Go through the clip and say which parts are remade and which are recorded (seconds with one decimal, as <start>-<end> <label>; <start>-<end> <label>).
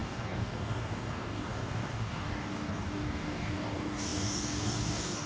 0.0-5.3 remade